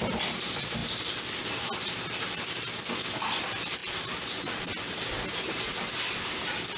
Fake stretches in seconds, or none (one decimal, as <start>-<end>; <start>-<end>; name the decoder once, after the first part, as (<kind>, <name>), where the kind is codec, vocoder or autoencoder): none

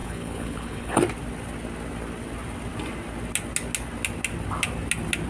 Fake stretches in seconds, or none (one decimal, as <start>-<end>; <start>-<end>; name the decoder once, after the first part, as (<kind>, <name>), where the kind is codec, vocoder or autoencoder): 0.0-1.0 (codec, HILCodec)

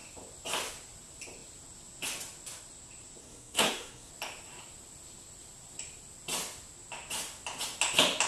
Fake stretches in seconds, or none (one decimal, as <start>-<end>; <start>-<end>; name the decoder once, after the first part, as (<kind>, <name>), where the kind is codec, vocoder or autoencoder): 3.2-4.1 (codec, SNAC)

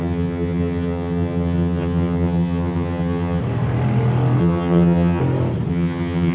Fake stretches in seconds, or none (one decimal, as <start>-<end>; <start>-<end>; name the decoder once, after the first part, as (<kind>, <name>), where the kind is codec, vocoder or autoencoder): 0.0-3.4 (vocoder, HiFi-GAN); 4.4-5.2; 5.7-6.3